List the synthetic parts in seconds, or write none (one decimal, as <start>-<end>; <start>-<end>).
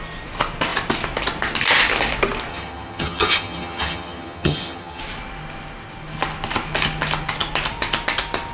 2.5-5.0